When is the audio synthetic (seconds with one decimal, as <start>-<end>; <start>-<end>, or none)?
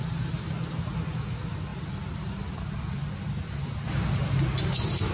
none